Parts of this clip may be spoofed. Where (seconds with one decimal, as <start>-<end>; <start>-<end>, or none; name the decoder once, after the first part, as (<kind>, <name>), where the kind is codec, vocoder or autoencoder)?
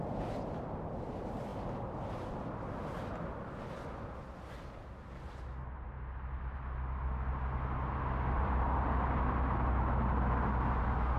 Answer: none